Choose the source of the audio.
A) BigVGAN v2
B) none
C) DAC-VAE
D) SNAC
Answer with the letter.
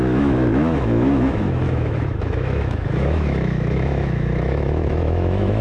C